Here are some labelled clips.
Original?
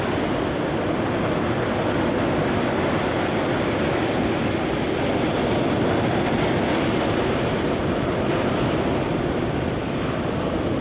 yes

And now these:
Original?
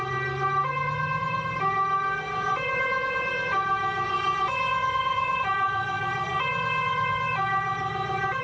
yes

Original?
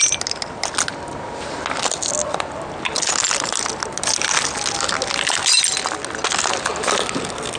yes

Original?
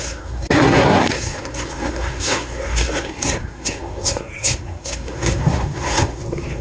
no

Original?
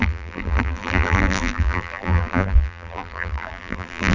no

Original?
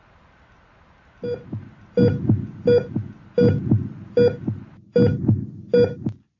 yes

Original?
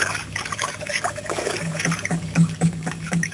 no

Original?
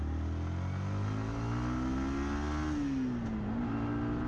yes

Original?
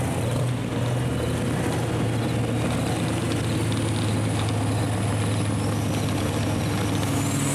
yes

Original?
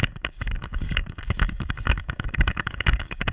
no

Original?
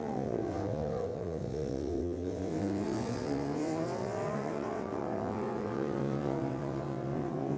no